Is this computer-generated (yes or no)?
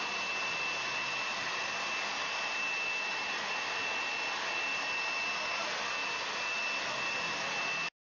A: no